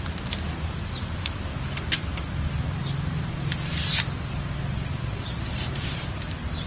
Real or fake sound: real